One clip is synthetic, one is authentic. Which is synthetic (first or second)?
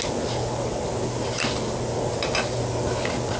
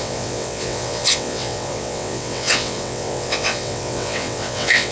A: second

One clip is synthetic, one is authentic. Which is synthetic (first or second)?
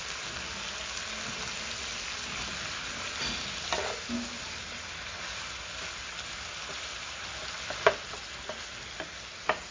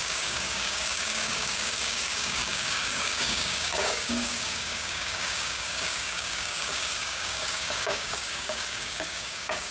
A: second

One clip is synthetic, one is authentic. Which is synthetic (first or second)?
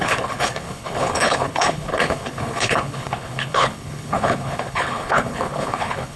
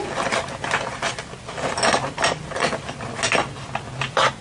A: first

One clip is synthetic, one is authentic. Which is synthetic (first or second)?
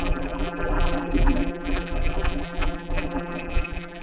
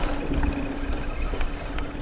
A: first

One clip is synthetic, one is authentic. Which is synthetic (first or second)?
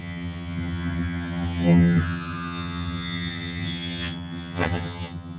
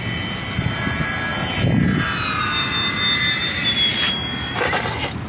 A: first